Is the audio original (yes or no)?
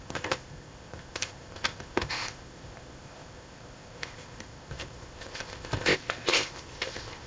no